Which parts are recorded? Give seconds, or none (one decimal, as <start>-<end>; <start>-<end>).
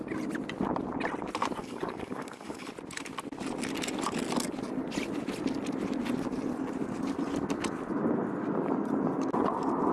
0.0-1.6; 2.7-9.9